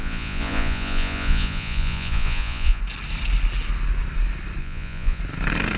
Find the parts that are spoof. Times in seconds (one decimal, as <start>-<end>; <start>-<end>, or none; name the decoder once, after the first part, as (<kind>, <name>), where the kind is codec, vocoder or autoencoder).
0.0-2.8 (vocoder, Vocos); 4.6-5.2